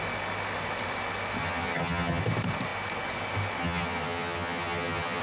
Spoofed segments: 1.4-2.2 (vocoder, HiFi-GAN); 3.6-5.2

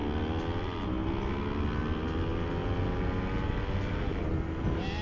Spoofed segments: none

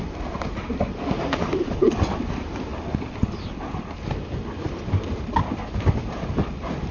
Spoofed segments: none

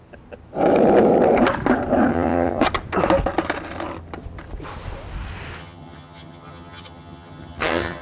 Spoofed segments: 2.1-2.6 (vocoder, HiFi-GAN); 5.6-8.0